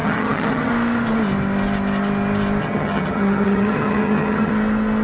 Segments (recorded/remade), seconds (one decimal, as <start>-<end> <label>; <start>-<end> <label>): 0.0-0.7 remade; 0.7-2.6 recorded; 2.6-4.5 remade; 4.5-5.0 recorded